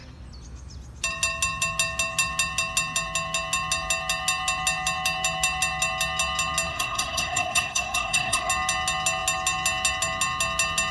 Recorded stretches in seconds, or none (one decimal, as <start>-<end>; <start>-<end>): 0.0-6.7; 8.5-10.9